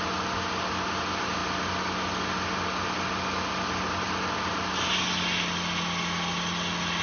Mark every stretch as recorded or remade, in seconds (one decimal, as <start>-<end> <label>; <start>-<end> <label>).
0.0-7.0 recorded